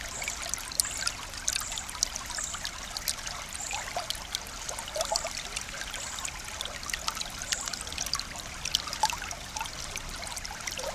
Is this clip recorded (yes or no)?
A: yes